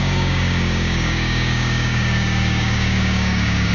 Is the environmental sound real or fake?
fake